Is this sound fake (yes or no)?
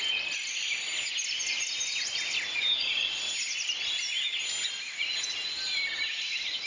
no